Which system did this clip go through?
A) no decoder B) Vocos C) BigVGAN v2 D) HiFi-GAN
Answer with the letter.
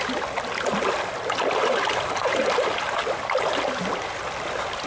A